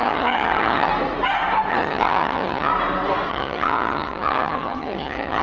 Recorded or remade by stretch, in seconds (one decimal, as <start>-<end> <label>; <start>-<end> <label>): 0.0-0.9 remade; 0.9-1.7 recorded; 1.7-2.7 remade; 2.7-3.3 recorded; 3.3-5.4 remade